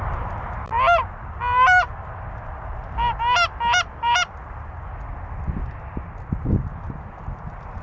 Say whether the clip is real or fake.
real